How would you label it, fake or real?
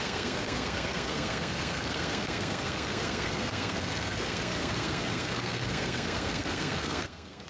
fake